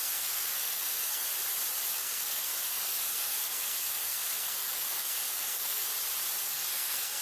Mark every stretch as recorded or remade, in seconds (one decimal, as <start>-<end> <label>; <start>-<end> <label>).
0.0-1.3 remade; 1.3-1.9 recorded; 1.9-5.9 remade; 5.9-6.4 recorded; 6.4-7.2 remade